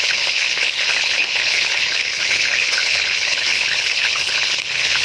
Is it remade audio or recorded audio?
remade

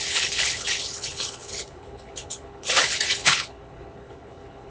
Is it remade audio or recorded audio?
remade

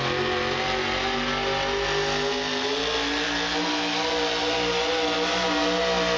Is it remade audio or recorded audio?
recorded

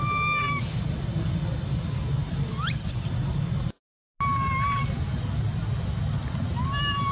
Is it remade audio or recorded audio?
recorded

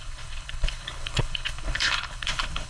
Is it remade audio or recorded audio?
remade